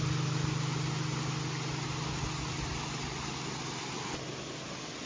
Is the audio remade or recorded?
recorded